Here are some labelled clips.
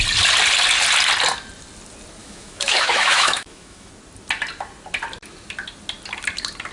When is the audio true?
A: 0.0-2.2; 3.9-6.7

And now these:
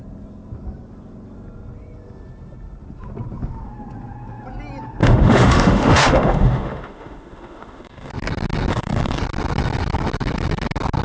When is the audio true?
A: 0.0-5.0; 8.1-8.7; 9.2-11.0

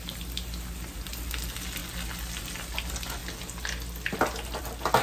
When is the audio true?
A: 0.0-5.0

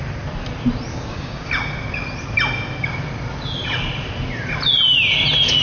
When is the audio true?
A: 0.0-0.9; 1.5-5.6

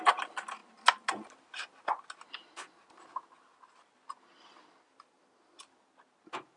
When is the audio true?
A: 0.0-6.6

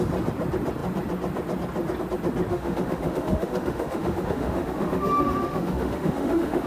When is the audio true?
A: 0.0-2.5

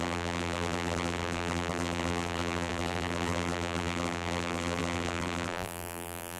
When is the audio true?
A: none